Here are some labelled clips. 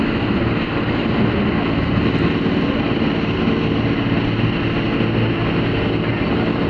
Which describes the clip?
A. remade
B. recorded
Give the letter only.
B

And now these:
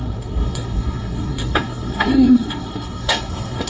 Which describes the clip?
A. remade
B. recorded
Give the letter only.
A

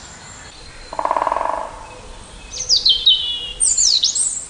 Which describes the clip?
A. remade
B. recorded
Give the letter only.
B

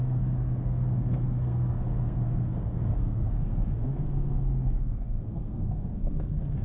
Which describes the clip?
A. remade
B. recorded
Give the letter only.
A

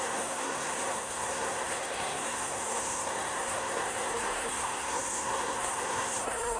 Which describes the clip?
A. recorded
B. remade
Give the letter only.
B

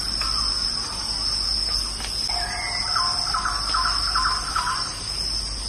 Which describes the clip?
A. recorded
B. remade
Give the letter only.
A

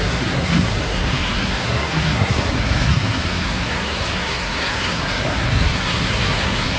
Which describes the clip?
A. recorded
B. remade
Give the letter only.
B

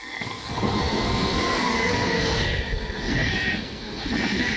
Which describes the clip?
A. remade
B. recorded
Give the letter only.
A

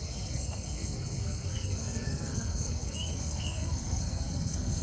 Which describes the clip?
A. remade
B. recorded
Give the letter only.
A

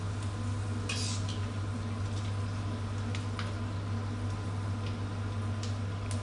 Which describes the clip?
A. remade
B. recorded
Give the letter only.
B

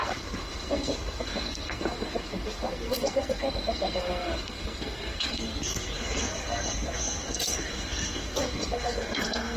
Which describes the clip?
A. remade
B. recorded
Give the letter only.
A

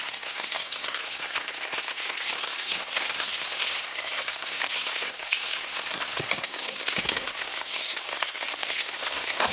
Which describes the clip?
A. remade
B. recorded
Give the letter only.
A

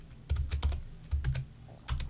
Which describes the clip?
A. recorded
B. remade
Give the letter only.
A